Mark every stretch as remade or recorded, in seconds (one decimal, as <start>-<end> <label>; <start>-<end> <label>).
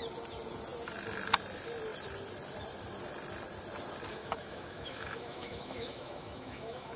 0.0-4.1 recorded; 4.1-7.0 remade